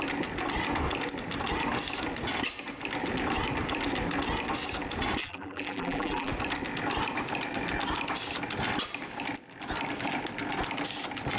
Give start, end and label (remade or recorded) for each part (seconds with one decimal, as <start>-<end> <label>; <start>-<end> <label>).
0.0-5.2 recorded; 5.2-6.3 remade; 6.3-11.4 recorded